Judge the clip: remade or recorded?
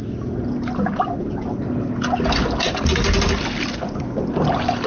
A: recorded